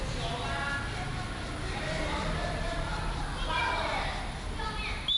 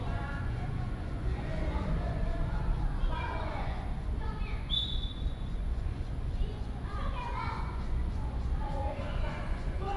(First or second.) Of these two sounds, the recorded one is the first